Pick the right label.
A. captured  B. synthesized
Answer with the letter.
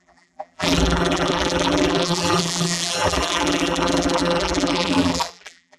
B